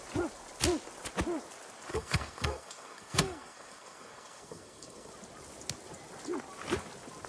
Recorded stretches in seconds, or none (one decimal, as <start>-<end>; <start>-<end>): 0.0-1.9; 5.1-7.3